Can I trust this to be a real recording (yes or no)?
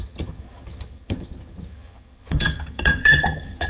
no